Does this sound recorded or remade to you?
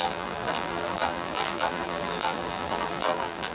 remade